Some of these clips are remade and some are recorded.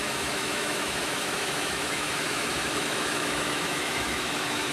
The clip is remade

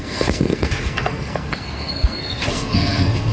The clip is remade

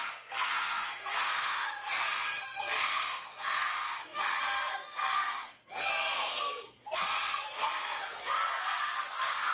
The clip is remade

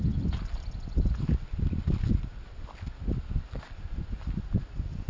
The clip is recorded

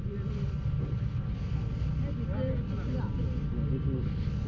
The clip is recorded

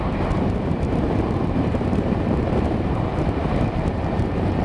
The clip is remade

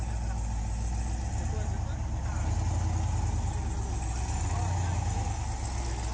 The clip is recorded